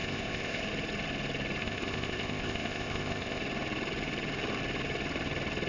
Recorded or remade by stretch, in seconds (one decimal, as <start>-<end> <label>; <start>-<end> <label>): 0.0-0.6 remade; 0.6-1.6 recorded; 1.6-3.4 remade; 3.4-5.7 recorded